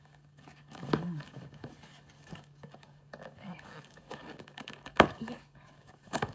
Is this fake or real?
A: fake